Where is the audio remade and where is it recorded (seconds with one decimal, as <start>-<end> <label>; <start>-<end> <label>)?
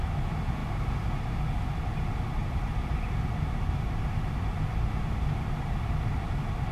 0.0-0.6 recorded; 0.6-1.2 remade; 1.2-2.4 recorded; 2.4-5.1 remade; 5.1-6.7 recorded